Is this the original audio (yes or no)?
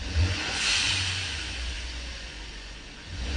no